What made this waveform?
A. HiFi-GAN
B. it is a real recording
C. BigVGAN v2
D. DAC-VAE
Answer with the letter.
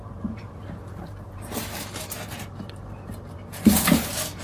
C